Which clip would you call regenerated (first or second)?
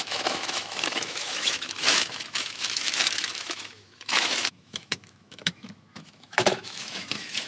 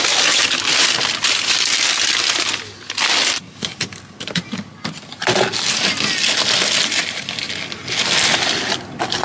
first